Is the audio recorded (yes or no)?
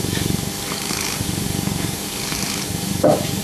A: no